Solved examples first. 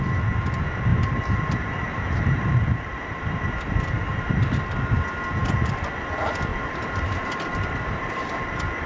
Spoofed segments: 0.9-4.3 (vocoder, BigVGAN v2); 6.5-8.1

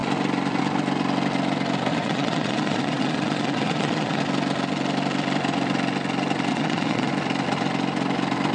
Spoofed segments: 1.9-4.2 (vocoder, Vocos); 6.5-7.1

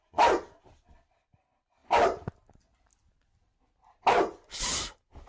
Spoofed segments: none

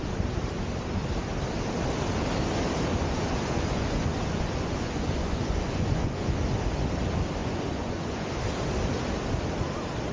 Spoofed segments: 2.9-6.5 (vocoder, Vocos); 7.4-8.4